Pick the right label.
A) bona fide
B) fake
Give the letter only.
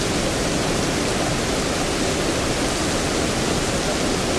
A